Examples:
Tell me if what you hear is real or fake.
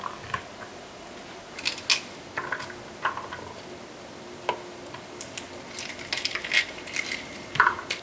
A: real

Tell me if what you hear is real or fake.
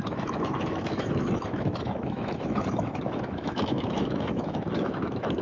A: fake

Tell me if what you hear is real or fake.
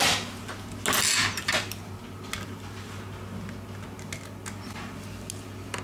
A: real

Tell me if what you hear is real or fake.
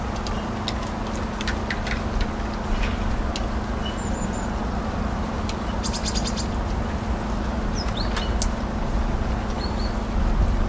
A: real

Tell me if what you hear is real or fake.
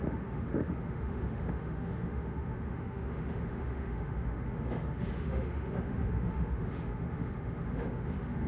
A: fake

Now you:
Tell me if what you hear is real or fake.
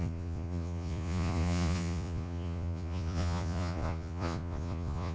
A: fake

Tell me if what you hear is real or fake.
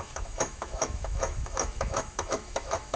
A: fake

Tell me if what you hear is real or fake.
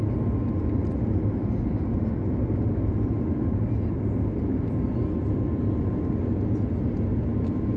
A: real